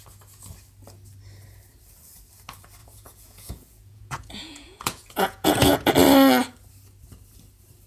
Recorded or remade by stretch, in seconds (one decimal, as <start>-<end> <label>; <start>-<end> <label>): 0.0-2.8 recorded; 2.8-5.9 remade; 5.9-7.9 recorded

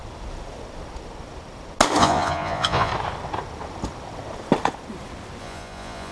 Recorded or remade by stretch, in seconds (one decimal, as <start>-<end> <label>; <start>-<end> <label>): 0.0-2.0 recorded; 2.0-2.9 remade; 2.9-5.4 recorded; 5.4-6.1 remade

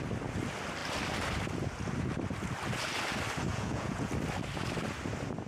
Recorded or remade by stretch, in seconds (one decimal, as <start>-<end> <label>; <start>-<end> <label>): 0.0-3.5 recorded; 3.5-4.1 remade; 4.1-5.5 recorded

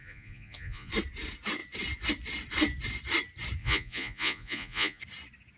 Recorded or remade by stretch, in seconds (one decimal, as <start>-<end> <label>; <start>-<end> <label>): 0.0-0.9 remade; 0.9-3.6 recorded; 3.6-5.0 remade; 5.0-5.6 recorded